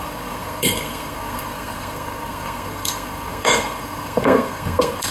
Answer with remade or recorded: remade